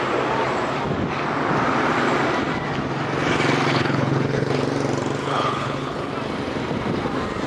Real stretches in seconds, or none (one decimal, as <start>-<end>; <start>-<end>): 0.0-3.7; 4.5-5.2; 6.1-7.5

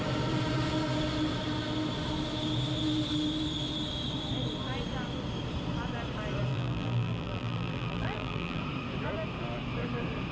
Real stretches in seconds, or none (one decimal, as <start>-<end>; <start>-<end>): 0.0-6.5; 8.6-10.3

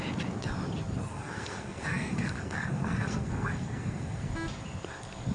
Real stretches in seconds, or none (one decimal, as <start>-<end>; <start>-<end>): 0.0-1.1; 4.3-5.3

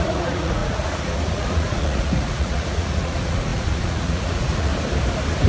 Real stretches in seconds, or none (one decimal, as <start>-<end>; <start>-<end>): 4.7-5.5

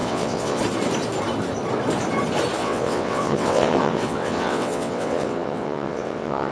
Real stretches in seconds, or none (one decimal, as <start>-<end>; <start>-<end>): 0.6-2.6

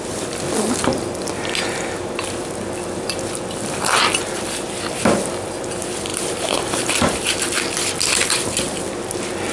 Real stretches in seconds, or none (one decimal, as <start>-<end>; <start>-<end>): 0.0-6.1; 7.4-9.5

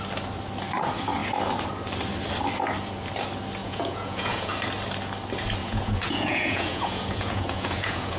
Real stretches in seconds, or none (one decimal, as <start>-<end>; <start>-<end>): 0.0-3.6; 4.5-5.6